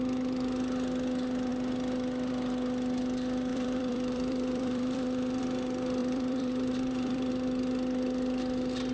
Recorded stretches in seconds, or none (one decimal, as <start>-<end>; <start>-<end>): 0.0-3.5; 5.4-6.0; 7.3-8.9